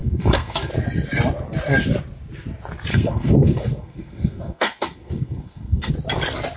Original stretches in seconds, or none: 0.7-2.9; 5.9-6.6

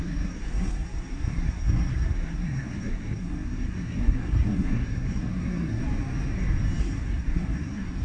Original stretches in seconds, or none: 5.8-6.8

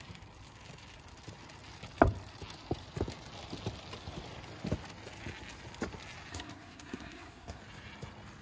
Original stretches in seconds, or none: 0.0-6.3; 7.6-8.4

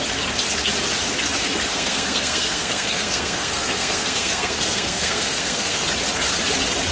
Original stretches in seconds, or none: 0.0-1.7; 5.8-6.9

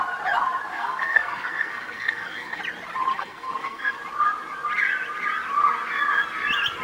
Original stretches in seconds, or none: 0.0-0.7; 2.6-3.1; 4.0-6.8

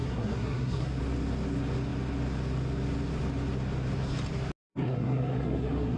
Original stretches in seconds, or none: 1.0-4.7

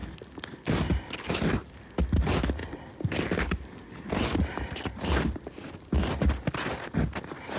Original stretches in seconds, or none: 0.0-7.6